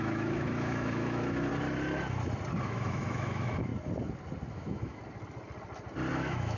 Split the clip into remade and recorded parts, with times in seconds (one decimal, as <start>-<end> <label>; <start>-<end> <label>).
0.0-1.5 remade; 1.5-2.6 recorded; 2.6-3.7 remade; 3.7-4.5 recorded; 4.5-5.0 remade; 5.0-6.1 recorded; 6.1-6.6 remade